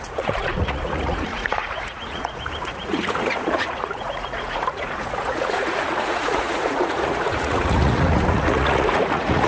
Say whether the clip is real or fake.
fake